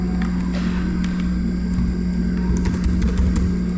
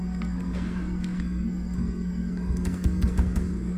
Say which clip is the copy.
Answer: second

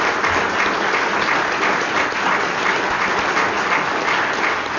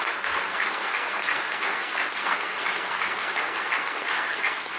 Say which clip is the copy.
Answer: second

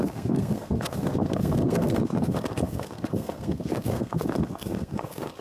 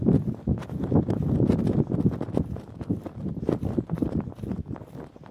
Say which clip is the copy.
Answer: first